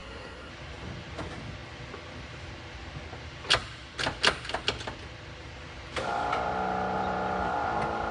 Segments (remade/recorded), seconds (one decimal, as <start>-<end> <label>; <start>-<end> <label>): 0.0-0.5 remade; 0.5-8.1 recorded